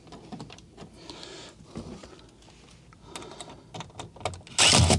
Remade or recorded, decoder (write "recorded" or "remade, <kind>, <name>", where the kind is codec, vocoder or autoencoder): recorded